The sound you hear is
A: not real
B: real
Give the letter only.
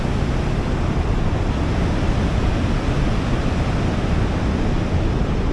B